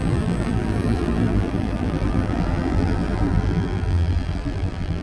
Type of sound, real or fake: fake